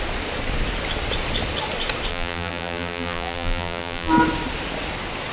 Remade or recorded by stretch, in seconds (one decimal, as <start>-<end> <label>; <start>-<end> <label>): 0.0-2.1 recorded; 2.1-4.1 remade; 4.1-5.3 recorded